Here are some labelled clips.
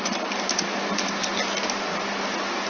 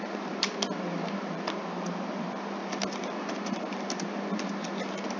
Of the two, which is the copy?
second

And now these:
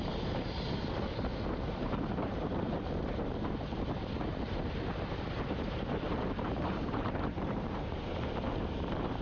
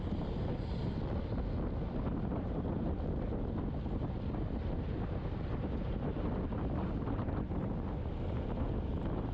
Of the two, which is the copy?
first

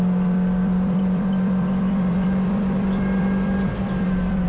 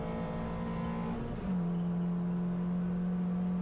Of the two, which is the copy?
first